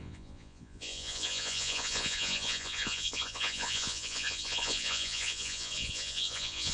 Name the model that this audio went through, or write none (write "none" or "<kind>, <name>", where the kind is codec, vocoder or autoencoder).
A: vocoder, Vocos